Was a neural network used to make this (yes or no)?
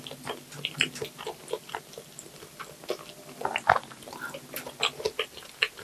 no